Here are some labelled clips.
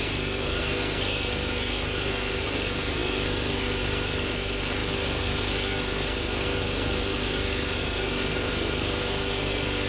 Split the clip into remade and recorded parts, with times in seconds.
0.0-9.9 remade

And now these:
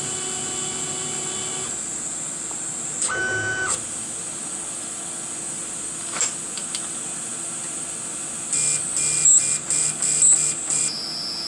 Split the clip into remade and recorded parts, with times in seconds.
0.0-11.5 recorded

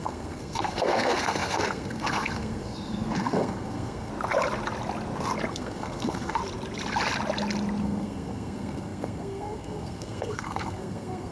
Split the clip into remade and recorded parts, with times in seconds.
0.0-4.1 remade; 4.1-5.5 recorded; 5.5-6.4 remade; 6.4-7.8 recorded; 7.8-11.3 remade

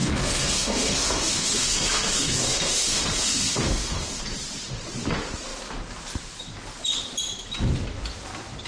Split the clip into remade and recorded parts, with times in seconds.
0.0-4.2 remade; 4.2-8.7 recorded